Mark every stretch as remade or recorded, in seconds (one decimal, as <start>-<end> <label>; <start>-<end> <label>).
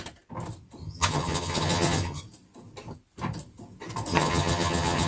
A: 0.0-0.8 recorded; 0.8-2.2 remade; 2.2-4.1 recorded; 4.1-5.1 remade